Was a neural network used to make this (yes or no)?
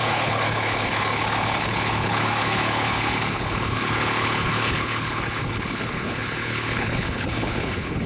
yes